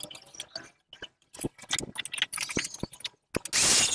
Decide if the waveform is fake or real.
real